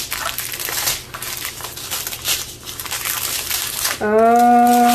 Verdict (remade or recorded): recorded